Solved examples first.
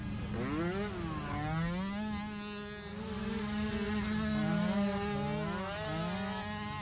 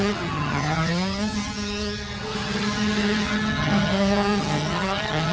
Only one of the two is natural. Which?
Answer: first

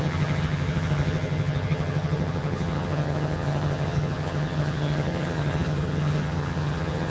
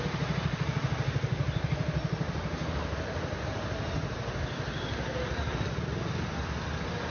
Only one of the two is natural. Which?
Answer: second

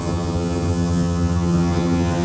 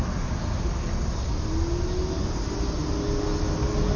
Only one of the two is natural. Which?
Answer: second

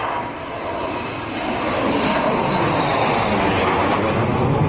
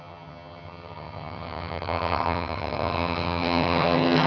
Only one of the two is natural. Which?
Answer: first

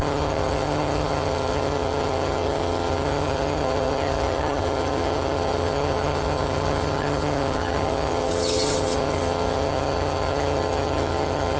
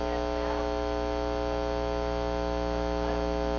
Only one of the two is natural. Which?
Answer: second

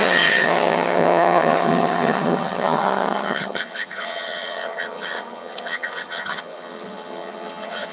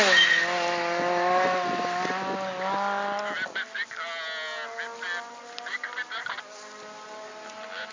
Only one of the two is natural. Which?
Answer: second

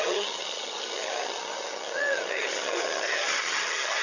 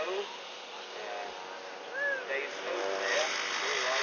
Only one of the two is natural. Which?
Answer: second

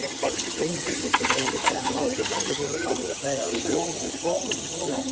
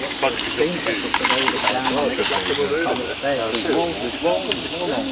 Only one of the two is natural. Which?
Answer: second